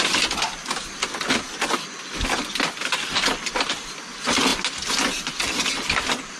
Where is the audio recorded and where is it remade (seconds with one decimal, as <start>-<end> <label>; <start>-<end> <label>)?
0.0-6.4 recorded